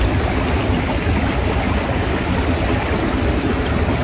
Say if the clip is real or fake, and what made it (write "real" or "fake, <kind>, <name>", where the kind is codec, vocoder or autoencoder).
real